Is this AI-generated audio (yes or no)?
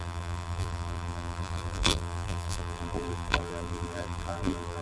yes